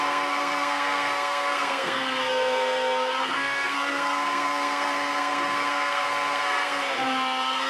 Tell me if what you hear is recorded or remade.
remade